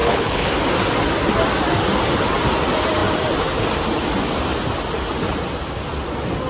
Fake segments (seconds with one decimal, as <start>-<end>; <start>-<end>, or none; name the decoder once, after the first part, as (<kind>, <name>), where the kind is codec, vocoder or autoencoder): 0.0-0.5 (codec, HILCodec)